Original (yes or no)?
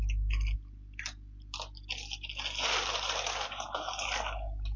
no